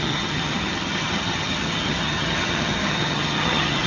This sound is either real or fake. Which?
fake